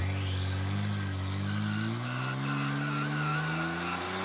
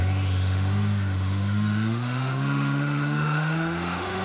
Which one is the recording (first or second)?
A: first